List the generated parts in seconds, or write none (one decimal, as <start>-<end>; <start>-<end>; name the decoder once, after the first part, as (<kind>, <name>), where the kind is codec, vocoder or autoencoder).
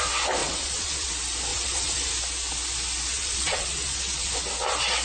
0.4-1.1 (vocoder, WaveNeXt); 1.5-2.1; 3.1-4.3